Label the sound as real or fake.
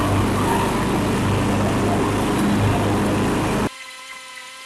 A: real